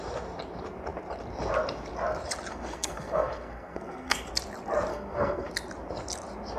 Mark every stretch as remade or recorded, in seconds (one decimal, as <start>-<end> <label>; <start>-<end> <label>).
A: 0.0-2.5 recorded; 2.5-4.3 remade; 4.3-4.9 recorded; 4.9-5.5 remade; 5.5-6.6 recorded